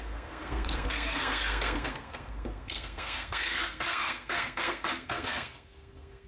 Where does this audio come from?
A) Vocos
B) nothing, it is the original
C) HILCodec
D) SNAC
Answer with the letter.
D